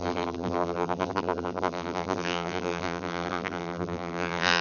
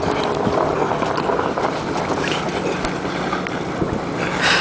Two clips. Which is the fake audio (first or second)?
first